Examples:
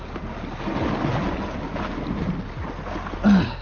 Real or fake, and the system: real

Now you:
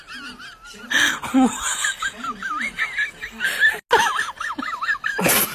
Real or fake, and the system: real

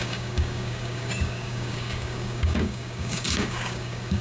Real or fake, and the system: fake, codec, DAC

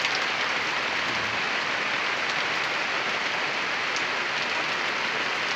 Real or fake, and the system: real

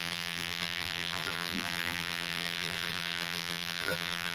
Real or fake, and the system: fake, vocoder, BigVGAN v2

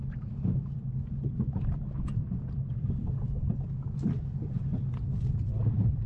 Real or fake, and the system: fake, vocoder, BigVGAN v2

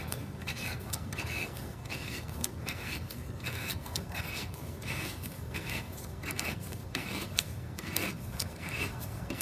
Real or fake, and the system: fake, codec, SNAC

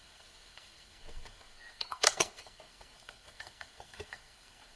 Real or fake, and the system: fake, codec, SNAC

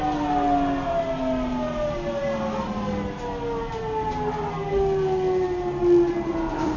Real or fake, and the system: real